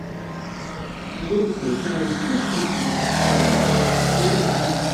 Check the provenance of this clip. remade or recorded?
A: remade